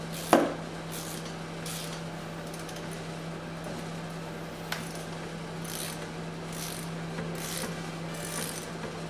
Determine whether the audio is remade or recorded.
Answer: recorded